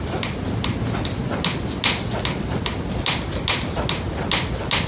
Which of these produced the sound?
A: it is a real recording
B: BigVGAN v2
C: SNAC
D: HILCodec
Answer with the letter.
A